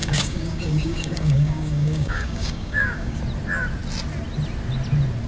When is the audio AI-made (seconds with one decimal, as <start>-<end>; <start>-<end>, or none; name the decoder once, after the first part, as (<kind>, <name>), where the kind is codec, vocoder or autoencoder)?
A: 0.0-3.2 (codec, DAC)